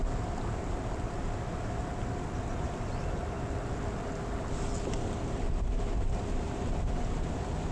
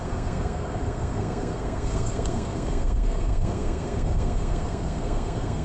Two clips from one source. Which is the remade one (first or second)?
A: second